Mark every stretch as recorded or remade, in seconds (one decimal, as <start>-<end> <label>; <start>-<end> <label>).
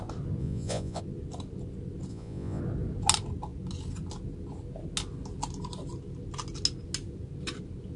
0.0-0.4 recorded; 0.4-1.0 remade; 1.0-2.1 recorded; 2.1-2.6 remade; 2.6-8.0 recorded